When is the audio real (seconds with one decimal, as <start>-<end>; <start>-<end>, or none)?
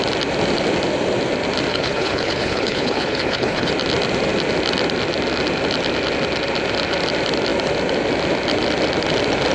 0.0-1.7; 3.7-9.5